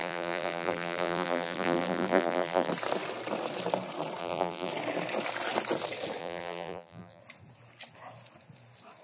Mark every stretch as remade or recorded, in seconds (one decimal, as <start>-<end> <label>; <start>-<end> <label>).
0.0-2.7 remade; 2.7-4.2 recorded; 4.2-4.7 remade; 4.7-6.2 recorded; 6.2-7.2 remade; 7.2-9.0 recorded